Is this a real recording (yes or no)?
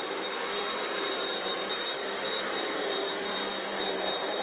no